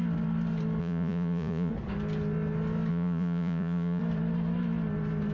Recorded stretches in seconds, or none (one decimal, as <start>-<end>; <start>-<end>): 0.0-0.8; 1.7-2.9; 4.0-5.3